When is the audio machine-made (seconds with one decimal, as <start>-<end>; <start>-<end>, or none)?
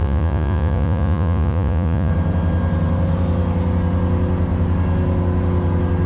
0.0-2.1